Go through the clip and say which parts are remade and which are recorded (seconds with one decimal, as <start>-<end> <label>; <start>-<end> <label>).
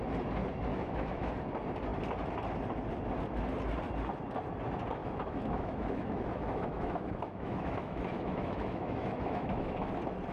0.0-0.7 recorded; 0.7-1.3 remade; 1.3-5.0 recorded; 5.0-9.9 remade; 9.9-10.3 recorded